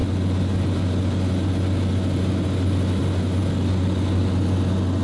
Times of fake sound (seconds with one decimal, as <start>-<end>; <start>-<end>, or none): none